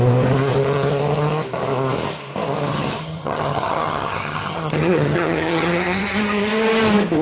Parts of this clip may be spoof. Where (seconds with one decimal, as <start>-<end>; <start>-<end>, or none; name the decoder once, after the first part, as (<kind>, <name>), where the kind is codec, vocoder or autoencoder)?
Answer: 2.7-6.5 (vocoder, HiFi-GAN)